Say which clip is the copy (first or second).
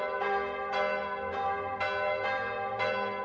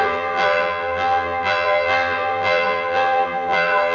second